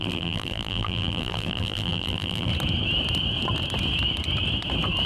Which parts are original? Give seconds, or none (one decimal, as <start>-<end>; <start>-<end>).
2.5-5.1